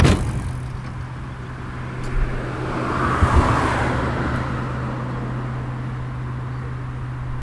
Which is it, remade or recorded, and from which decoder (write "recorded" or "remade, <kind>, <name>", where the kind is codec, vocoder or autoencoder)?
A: recorded